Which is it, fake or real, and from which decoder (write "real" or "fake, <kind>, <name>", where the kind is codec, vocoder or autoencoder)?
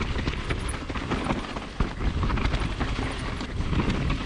real